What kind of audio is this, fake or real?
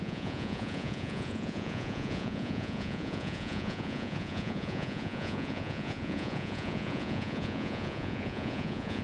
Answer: fake